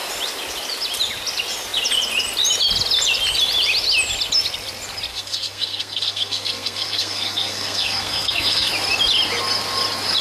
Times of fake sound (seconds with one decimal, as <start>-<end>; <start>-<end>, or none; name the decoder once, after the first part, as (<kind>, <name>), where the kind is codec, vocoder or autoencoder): 5.1-8.7 (codec, SNAC)

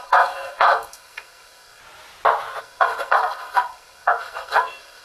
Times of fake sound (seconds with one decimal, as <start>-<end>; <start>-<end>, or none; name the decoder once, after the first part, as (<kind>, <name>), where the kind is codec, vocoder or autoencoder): 0.0-1.8 (codec, SNAC); 2.6-5.0

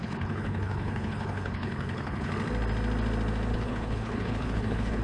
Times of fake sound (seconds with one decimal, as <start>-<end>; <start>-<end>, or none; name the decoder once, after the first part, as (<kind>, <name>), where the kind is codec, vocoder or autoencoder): 0.0-2.3 (codec, HILCodec); 3.5-5.0

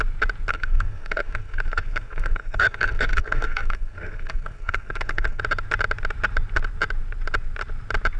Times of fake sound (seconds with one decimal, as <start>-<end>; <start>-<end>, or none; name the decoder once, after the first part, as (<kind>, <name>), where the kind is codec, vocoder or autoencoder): 0.5-5.4 (codec, SNAC)

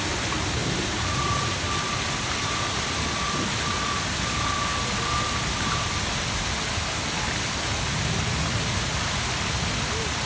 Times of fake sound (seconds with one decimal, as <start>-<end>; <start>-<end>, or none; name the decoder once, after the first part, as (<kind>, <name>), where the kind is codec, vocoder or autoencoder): 0.6-1.9 (vocoder, BigVGAN v2)

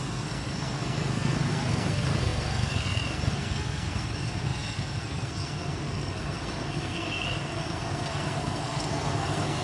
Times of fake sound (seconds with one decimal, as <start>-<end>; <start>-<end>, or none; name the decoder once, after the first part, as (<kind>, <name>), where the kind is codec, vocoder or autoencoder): 0.0-9.6 (codec, SNAC)